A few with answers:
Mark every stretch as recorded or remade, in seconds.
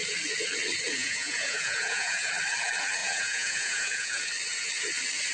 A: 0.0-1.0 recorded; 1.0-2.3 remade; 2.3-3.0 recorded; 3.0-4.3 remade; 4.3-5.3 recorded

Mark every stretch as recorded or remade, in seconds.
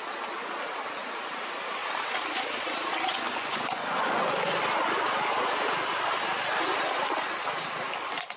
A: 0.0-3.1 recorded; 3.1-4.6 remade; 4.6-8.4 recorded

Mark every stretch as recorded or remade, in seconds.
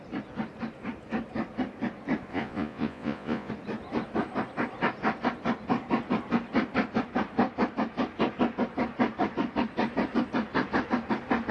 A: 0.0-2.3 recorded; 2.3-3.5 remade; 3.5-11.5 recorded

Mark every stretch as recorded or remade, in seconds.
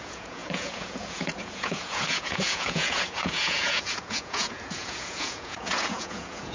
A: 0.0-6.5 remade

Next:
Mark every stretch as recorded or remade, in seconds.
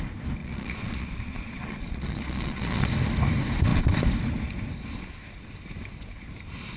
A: 0.0-0.4 recorded; 0.4-2.9 remade; 2.9-6.8 recorded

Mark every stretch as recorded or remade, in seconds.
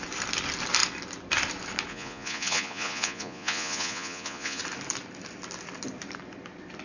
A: 0.0-1.9 recorded; 1.9-4.6 remade; 4.6-6.8 recorded